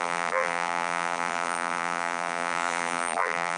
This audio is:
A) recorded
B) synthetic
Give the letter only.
B